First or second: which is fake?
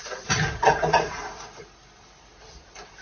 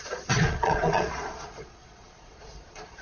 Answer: second